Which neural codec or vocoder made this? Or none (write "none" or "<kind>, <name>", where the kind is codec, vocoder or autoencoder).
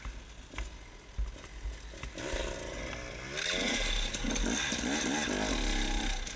none